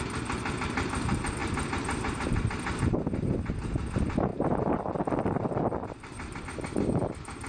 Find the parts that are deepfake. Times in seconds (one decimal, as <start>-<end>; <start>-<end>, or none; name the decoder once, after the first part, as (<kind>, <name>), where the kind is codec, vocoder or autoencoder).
1.4-2.5 (vocoder, BigVGAN v2); 4.3-6.4